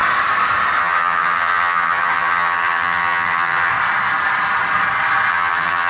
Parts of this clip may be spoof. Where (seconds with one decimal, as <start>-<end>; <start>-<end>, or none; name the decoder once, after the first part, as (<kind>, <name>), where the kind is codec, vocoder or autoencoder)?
0.8-3.7 (vocoder, HiFi-GAN); 5.3-5.9